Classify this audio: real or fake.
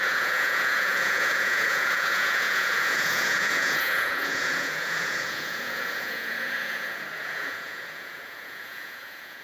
fake